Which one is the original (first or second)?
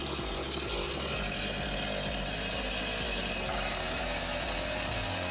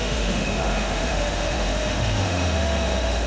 first